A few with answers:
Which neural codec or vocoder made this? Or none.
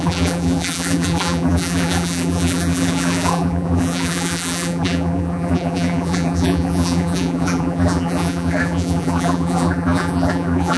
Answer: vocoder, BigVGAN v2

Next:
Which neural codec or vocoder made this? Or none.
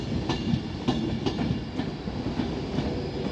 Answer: none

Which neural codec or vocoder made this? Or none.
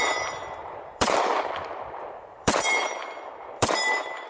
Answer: vocoder, BigVGAN v2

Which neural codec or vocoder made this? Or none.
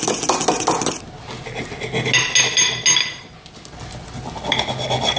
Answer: none